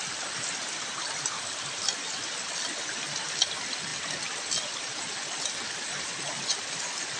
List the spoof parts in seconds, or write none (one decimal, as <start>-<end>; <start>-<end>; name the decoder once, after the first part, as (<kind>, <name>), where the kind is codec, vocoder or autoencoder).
none